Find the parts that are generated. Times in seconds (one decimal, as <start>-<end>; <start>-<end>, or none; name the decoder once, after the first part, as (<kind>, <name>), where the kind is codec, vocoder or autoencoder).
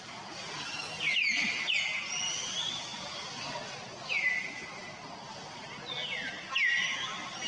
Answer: none